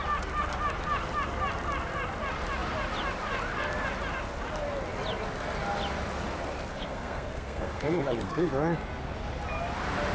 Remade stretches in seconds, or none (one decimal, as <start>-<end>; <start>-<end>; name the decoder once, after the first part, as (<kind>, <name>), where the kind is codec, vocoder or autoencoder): 6.7-8.5 (codec, SNAC)